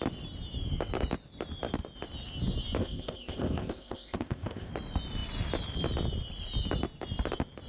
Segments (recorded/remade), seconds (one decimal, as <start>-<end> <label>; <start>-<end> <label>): 0.0-2.8 recorded; 2.8-4.7 remade; 4.7-7.7 recorded